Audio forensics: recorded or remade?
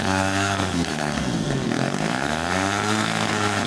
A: remade